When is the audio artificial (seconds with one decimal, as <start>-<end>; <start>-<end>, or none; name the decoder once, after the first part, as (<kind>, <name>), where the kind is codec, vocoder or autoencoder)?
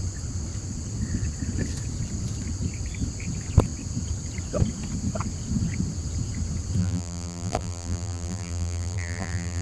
6.8-9.6 (vocoder, BigVGAN v2)